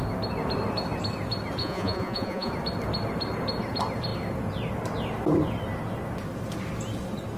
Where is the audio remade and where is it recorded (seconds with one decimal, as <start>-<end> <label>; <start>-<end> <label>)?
0.0-1.6 recorded; 1.6-2.5 remade; 2.5-7.4 recorded